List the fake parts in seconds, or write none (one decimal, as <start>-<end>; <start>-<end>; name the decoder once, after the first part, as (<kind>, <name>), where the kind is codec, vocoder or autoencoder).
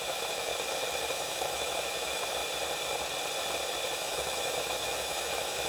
0.0-0.5 (autoencoder, DAC-VAE); 1.1-2.4; 3.9-5.7